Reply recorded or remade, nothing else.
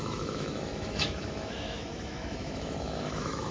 remade